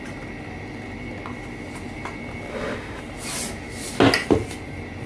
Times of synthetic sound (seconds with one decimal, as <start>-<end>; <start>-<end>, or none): 2.5-3.0